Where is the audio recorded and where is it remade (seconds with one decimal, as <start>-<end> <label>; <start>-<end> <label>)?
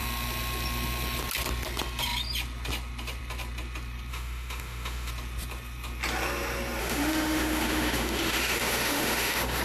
0.0-4.1 recorded; 4.1-5.1 remade; 5.1-6.8 recorded; 6.8-9.6 remade